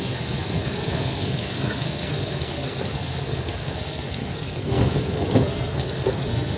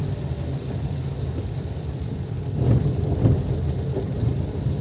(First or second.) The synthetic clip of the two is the first